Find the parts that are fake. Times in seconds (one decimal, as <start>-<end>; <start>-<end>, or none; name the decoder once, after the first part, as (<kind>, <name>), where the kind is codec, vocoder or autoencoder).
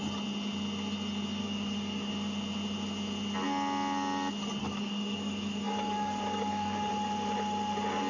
1.4-2.1 (codec, DAC); 4.6-6.9